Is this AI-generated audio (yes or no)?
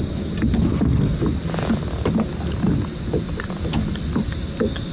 no